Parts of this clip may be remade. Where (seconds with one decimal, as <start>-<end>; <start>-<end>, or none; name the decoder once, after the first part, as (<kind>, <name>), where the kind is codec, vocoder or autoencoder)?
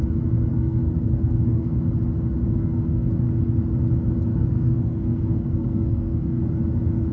0.5-1.8 (codec, SNAC); 2.4-3.1; 4.3-6.4